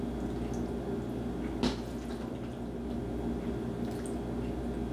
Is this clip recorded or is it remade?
recorded